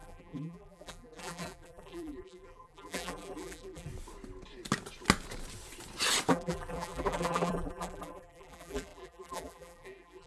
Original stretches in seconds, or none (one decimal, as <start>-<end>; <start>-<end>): 3.9-6.3

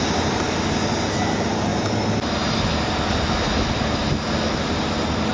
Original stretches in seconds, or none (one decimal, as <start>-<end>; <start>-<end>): 0.0-5.3

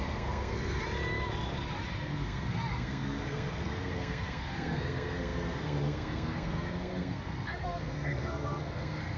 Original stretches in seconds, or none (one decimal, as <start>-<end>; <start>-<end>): 0.8-1.9

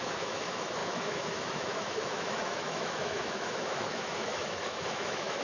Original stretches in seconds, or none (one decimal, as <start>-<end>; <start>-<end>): none